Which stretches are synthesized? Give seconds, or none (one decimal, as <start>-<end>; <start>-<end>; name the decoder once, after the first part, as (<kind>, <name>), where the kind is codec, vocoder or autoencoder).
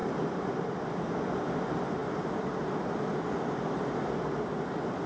0.0-0.5 (vocoder, BigVGAN v2)